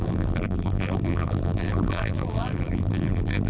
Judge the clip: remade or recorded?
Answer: remade